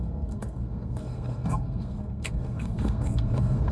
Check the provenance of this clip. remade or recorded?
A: remade